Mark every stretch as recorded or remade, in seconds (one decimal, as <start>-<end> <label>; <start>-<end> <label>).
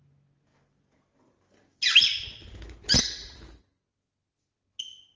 0.0-5.2 recorded